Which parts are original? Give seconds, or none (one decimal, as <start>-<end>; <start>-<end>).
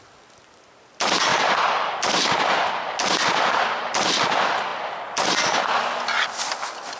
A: 0.0-7.0